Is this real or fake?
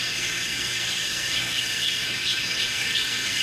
fake